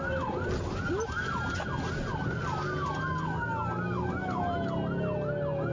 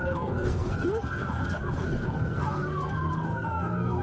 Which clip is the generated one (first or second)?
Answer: second